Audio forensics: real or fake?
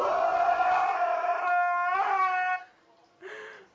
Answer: real